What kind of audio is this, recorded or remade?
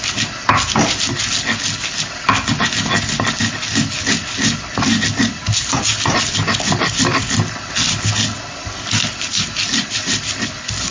recorded